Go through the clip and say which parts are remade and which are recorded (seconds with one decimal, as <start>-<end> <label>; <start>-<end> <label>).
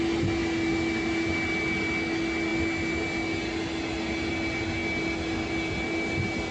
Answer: 0.0-6.5 recorded